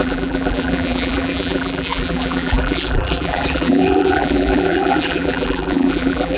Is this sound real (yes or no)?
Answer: no